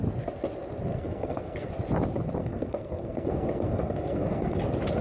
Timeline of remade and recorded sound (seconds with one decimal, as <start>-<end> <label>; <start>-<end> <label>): 0.0-0.9 recorded; 0.9-1.7 remade; 1.7-2.4 recorded; 2.4-4.6 remade; 4.6-5.0 recorded